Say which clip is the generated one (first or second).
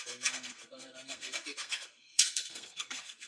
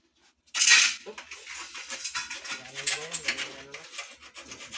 first